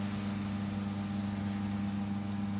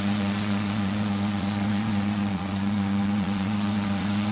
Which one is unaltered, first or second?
first